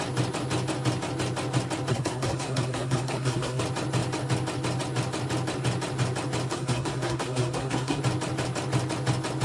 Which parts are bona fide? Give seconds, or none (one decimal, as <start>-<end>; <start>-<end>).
0.0-1.9; 3.6-6.5; 8.0-9.4